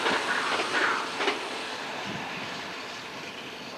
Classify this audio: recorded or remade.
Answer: recorded